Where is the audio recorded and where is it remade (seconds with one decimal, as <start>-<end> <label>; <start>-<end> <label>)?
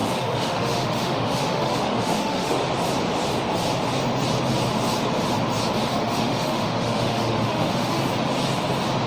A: 0.0-2.7 remade; 2.7-5.9 recorded; 5.9-8.0 remade; 8.0-9.1 recorded